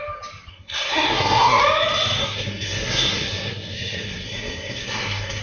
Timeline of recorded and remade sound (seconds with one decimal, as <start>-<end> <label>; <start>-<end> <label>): 0.0-0.5 recorded; 0.5-1.6 remade; 1.6-2.2 recorded; 2.2-5.4 remade